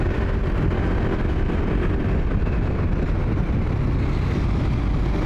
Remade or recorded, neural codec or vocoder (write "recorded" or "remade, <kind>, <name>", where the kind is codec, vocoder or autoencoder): recorded